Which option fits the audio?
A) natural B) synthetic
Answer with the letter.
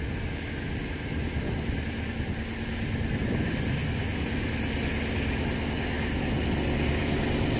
A